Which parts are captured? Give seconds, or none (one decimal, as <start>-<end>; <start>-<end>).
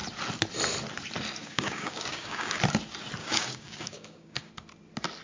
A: 0.0-1.4; 2.6-3.2; 4.5-5.2